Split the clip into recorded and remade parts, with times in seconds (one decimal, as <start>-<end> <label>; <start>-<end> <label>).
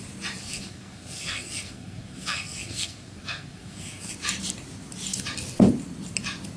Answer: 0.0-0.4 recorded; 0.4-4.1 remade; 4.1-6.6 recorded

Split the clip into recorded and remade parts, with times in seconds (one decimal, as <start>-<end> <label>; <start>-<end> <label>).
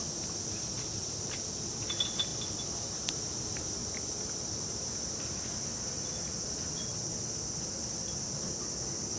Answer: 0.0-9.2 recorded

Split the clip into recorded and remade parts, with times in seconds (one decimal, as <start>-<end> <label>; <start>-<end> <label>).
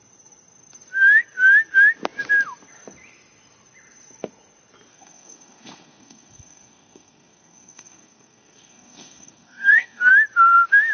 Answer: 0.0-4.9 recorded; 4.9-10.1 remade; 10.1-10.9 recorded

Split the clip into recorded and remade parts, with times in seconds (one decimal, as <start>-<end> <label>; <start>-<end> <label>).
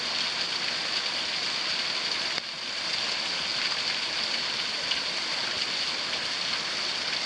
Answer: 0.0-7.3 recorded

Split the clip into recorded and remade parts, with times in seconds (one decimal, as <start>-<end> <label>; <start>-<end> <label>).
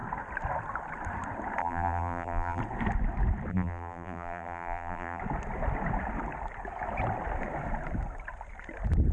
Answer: 0.0-1.6 recorded; 1.6-2.6 remade; 2.6-3.5 recorded; 3.5-5.2 remade; 5.2-9.1 recorded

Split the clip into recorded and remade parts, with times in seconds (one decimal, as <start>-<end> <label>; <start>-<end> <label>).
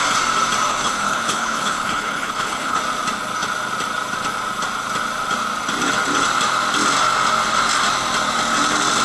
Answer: 0.0-0.7 recorded; 0.7-2.8 remade; 2.8-9.0 recorded